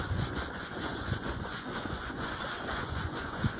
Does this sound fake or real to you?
fake